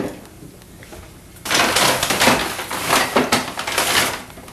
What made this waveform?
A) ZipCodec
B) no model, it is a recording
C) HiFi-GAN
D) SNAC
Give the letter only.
B